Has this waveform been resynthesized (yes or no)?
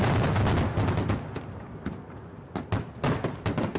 no